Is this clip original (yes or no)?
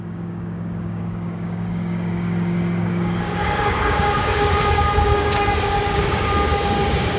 no